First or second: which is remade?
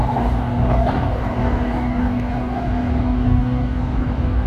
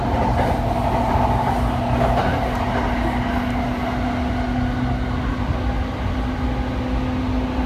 first